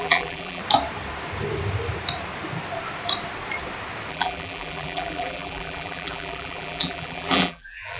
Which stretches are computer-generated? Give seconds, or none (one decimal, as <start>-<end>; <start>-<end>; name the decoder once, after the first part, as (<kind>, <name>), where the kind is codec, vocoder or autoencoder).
0.0-0.6 (vocoder, BigVGAN v2); 4.1-8.0